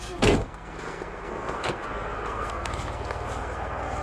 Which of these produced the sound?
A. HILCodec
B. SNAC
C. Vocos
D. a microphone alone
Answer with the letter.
B